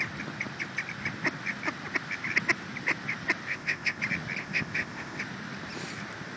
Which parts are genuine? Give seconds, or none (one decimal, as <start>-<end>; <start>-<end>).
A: 0.0-3.5; 4.0-4.4; 5.2-6.4